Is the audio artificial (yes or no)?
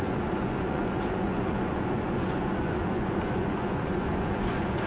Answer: yes